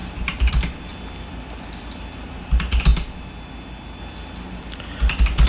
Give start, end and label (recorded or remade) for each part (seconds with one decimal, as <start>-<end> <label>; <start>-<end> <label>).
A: 0.0-0.5 remade; 0.5-5.5 recorded